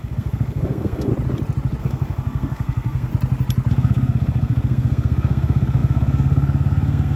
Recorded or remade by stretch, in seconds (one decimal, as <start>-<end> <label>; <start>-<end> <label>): 0.0-1.1 remade; 1.1-1.8 recorded; 1.8-3.1 remade; 3.1-3.7 recorded; 3.7-7.2 remade